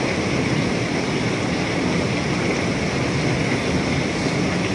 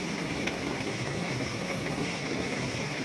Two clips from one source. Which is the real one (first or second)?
first